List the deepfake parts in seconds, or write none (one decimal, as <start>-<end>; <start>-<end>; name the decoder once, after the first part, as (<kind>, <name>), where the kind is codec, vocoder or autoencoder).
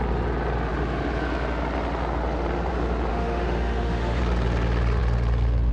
3.1-4.2 (autoencoder, DAC-VAE)